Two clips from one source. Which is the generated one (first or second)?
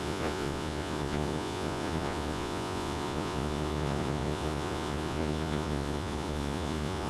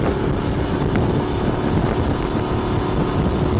first